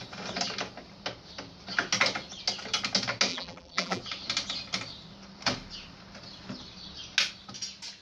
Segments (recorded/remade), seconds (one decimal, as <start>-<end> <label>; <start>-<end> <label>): 0.0-3.3 recorded; 3.3-4.0 remade; 4.0-8.0 recorded